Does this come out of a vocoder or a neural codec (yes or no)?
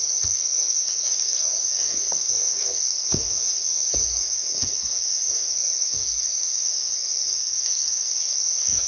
yes